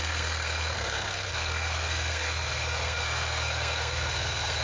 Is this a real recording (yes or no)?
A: no